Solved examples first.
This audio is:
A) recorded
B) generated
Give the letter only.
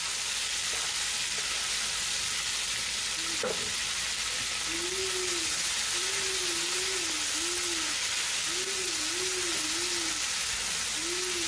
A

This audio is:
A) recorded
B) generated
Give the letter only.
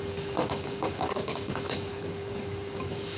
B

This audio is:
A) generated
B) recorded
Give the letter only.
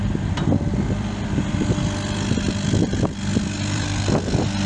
A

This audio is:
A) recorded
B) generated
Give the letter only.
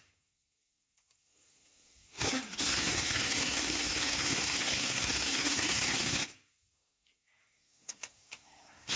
B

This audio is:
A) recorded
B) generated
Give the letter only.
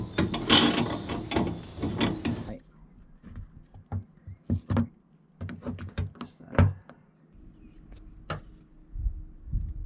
A